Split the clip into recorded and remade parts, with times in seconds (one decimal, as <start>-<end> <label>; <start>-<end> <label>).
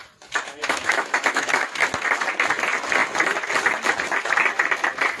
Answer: 0.0-0.6 recorded; 0.6-1.8 remade; 1.8-5.2 recorded